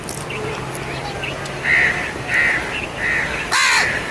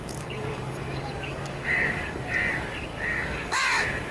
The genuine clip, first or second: first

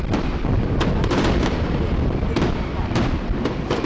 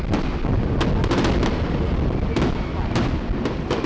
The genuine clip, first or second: second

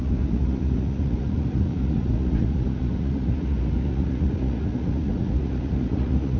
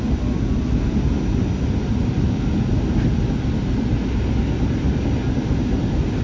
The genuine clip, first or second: second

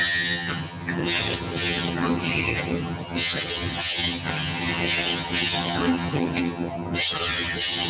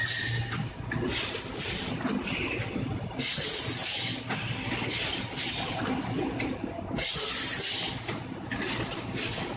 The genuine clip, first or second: second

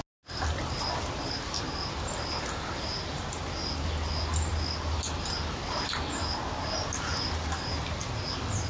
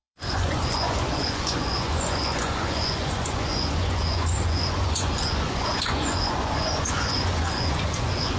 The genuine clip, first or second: first